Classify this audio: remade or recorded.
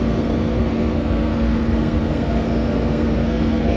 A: remade